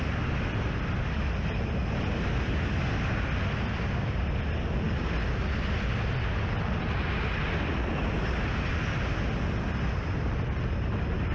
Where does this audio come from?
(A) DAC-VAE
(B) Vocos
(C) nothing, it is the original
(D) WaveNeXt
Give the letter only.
C